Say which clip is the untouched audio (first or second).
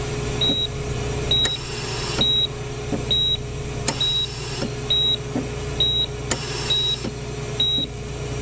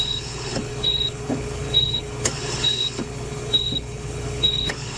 first